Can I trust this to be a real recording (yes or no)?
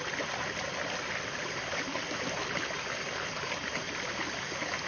yes